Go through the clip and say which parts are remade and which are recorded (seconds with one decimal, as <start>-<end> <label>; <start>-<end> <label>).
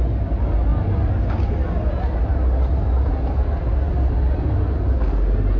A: 0.0-5.6 recorded